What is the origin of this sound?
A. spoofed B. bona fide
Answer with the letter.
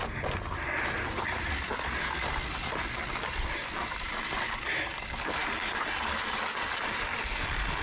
B